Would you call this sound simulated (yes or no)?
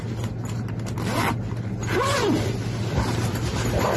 no